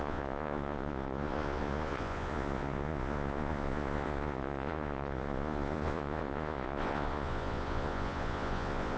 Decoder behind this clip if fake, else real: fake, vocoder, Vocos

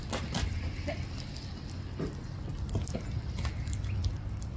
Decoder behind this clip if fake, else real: real